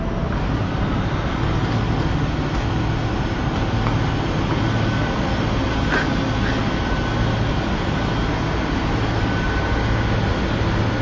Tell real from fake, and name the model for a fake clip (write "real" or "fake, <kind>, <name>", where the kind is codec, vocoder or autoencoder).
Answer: real